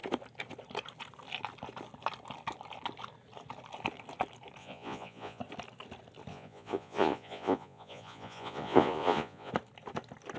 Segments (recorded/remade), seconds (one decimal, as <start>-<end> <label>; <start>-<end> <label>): 0.0-4.6 recorded; 4.6-5.4 remade; 5.4-6.3 recorded; 6.3-9.5 remade; 9.5-10.4 recorded